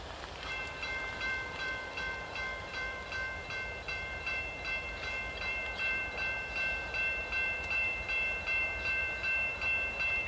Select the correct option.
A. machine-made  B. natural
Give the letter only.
A